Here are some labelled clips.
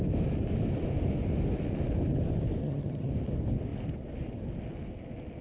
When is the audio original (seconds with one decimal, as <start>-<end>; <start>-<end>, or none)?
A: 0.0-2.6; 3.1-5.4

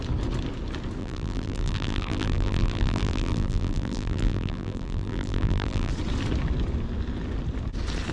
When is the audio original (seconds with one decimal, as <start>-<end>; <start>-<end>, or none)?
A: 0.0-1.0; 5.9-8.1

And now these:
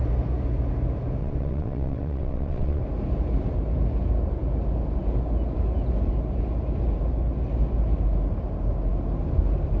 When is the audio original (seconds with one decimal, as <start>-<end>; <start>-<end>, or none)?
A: 0.0-1.2; 2.8-9.8